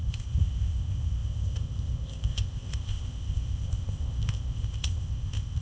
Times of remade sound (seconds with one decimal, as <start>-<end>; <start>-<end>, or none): 0.0-5.6